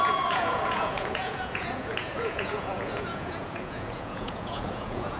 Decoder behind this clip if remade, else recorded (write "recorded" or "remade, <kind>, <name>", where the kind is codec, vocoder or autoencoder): remade, vocoder, Vocos